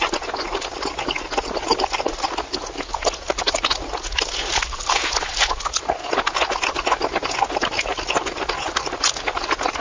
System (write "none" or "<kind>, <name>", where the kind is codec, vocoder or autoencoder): none